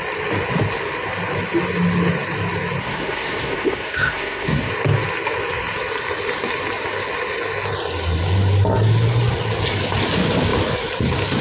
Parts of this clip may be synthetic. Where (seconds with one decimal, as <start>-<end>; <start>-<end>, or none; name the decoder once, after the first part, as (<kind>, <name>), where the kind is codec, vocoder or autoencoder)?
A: 2.8-4.7 (codec, SNAC)